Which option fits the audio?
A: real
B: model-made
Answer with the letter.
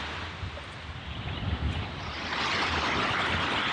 A